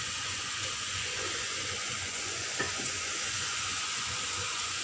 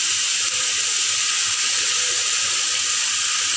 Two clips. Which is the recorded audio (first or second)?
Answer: second